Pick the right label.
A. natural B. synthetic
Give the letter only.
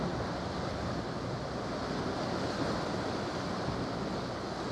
A